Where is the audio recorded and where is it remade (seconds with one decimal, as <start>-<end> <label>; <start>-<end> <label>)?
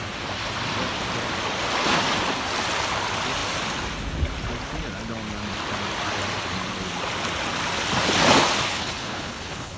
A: 0.0-8.7 recorded; 8.7-9.8 remade